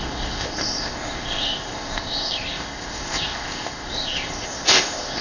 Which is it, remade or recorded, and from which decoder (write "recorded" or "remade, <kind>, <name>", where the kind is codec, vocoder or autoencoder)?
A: remade, codec, ZipCodec